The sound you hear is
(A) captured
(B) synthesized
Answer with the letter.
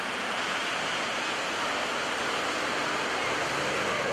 A